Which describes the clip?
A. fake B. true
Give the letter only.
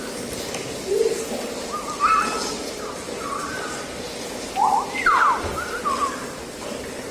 B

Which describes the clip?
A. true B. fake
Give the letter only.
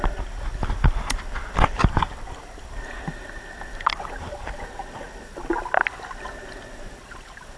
A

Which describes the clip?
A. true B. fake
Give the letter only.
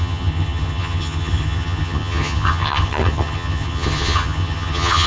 B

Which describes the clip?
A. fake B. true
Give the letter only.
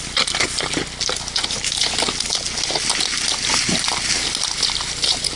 B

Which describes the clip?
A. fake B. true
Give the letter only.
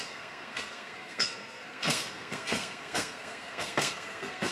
A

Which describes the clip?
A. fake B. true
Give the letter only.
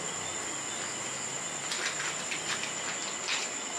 B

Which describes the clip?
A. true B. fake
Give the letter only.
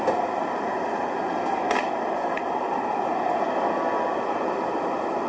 A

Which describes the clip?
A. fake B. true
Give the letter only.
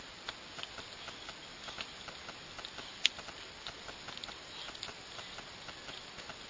B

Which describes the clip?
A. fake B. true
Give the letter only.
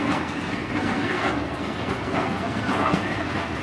A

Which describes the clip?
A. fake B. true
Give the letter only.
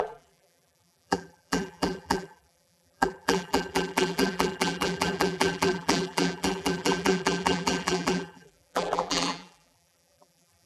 A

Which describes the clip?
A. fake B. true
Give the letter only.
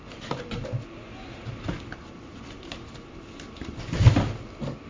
B